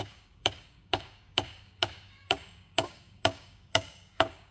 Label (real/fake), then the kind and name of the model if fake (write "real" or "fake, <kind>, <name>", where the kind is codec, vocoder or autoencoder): fake, codec, DAC